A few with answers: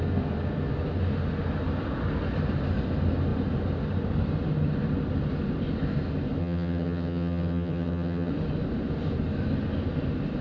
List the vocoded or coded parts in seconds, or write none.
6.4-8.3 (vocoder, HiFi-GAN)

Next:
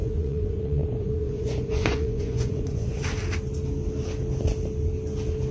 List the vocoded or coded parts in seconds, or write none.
0.0-3.0 (vocoder, Vocos)

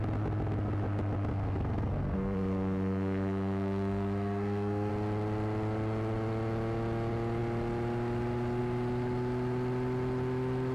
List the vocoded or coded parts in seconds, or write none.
1.3-4.9 (codec, SNAC)

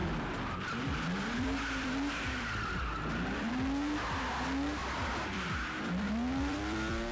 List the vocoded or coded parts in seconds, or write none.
0.0-3.5 (vocoder, BigVGAN v2); 4.8-7.1

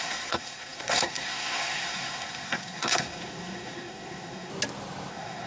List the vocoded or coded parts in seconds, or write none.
0.0-4.5 (codec, SNAC); 5.1-5.5

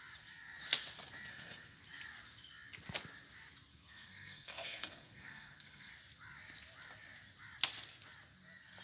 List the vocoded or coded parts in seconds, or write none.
1.3-1.8 (codec, SNAC); 3.7-5.9